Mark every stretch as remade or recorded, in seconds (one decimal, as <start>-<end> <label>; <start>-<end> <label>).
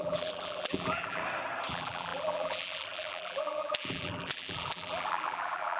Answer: 0.0-1.2 remade; 1.2-1.7 recorded; 1.7-5.8 remade